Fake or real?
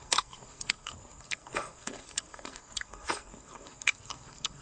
fake